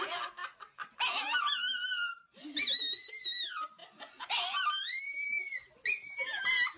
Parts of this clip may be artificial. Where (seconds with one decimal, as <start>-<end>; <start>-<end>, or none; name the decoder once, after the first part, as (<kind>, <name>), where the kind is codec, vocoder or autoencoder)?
none